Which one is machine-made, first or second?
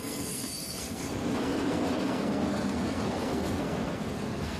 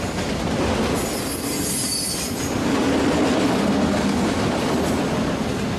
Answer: first